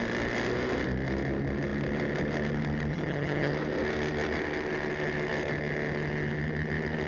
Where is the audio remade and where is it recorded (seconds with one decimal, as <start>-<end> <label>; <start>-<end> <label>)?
0.0-2.9 recorded; 2.9-3.5 remade; 3.5-7.1 recorded